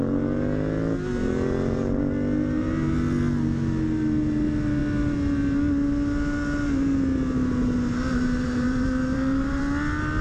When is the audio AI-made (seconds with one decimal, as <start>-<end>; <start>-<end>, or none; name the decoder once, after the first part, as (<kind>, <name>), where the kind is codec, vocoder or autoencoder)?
8.1-9.6 (vocoder, BigVGAN v2)